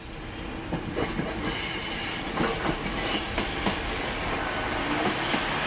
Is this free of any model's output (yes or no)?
yes